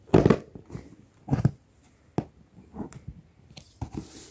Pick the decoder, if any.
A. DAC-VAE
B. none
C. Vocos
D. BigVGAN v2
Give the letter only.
B